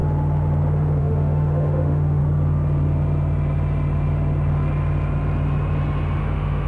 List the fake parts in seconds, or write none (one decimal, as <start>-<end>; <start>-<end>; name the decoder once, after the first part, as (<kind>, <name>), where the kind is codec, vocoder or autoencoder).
1.0-2.2 (autoencoder, DAC-VAE); 6.2-6.7